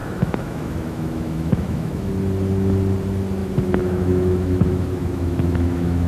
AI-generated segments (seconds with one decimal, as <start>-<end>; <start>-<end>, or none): 0.0-2.1; 3.4-6.1